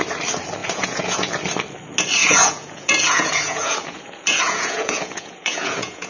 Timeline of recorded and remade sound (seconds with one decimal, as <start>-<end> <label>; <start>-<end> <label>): 0.0-0.6 recorded; 0.6-1.3 remade; 1.3-2.2 recorded; 2.2-6.1 remade